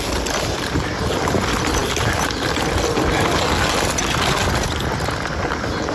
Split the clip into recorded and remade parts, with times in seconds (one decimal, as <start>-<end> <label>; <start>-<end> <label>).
0.0-5.9 recorded